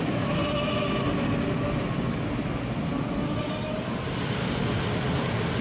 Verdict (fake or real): real